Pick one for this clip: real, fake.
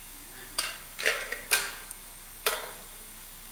fake